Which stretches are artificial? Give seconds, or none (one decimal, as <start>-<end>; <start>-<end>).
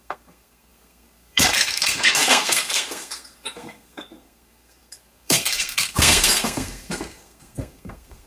0.0-8.3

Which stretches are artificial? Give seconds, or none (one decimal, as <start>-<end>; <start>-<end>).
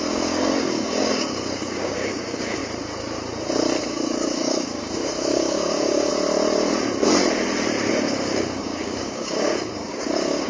0.0-2.6; 3.8-6.1; 7.9-10.5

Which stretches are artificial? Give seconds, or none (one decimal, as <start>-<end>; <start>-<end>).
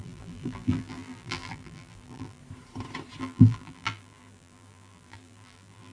0.0-2.4; 3.2-5.9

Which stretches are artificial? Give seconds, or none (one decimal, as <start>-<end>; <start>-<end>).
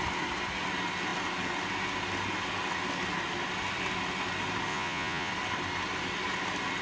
4.7-5.3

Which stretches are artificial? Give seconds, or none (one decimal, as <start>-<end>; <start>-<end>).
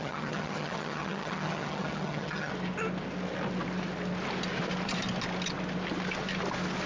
0.0-2.5